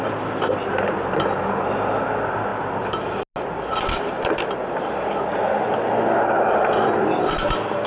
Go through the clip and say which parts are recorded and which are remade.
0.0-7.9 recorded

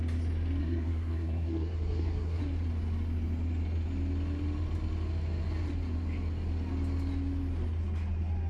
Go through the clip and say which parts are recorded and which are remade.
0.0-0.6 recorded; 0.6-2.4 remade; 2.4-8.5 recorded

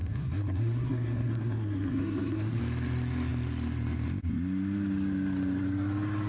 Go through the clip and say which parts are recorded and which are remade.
0.0-2.6 remade; 2.6-6.3 recorded

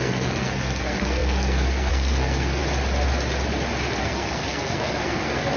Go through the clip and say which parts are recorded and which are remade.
0.0-2.6 remade; 2.6-4.0 recorded; 4.0-5.6 remade